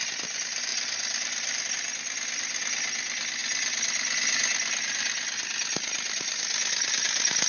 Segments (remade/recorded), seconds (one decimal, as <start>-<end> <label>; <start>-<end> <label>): 0.0-7.5 recorded